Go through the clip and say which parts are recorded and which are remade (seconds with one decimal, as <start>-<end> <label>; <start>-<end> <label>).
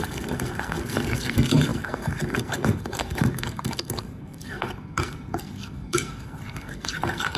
0.0-7.4 remade